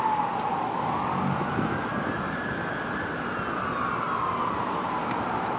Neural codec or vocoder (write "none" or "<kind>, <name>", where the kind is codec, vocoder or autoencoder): none